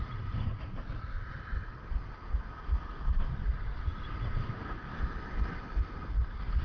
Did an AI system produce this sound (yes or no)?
no